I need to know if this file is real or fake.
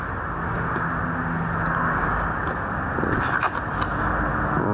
real